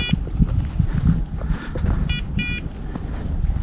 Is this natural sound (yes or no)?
yes